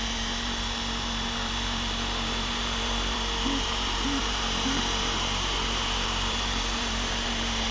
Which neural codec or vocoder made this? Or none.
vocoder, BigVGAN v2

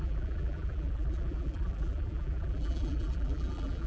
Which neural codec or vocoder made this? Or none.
vocoder, BigVGAN v2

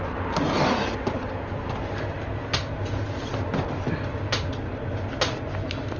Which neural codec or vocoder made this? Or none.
none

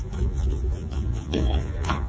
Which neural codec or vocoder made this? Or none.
vocoder, Vocos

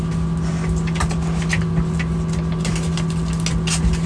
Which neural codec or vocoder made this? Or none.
none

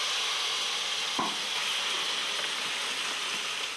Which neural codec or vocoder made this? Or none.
none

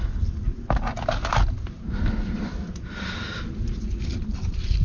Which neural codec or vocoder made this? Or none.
none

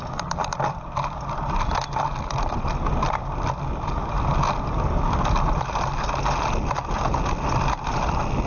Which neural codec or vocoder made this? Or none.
none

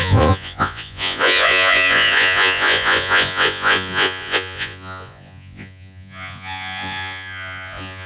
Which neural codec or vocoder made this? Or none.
vocoder, Vocos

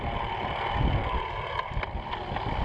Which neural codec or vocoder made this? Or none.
none